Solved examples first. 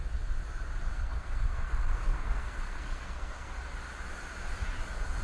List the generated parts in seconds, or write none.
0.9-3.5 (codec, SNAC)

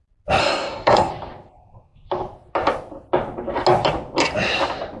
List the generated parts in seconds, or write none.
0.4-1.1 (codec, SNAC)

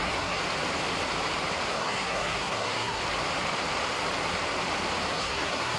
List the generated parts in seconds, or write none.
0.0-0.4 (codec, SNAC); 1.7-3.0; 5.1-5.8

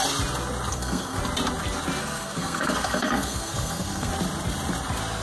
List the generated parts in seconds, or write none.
0.7-1.2 (codec, SNAC); 2.0-4.1

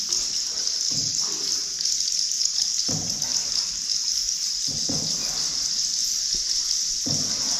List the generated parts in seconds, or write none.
none

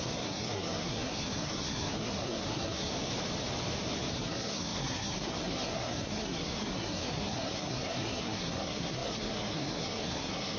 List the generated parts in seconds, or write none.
0.0-2.9 (codec, SNAC); 4.1-10.6

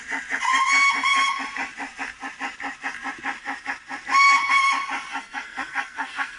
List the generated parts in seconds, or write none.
5.1-6.4 (codec, SNAC)

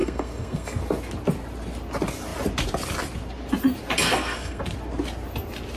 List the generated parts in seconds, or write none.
0.0-0.8 (codec, SNAC); 4.0-4.6